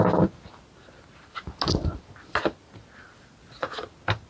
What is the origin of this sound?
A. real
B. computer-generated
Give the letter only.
A